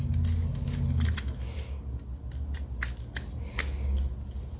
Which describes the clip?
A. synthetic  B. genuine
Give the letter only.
B